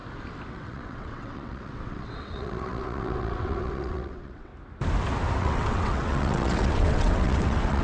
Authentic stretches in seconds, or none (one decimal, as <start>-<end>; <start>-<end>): 0.0-0.5; 4.5-5.4